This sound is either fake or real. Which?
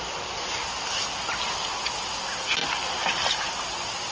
real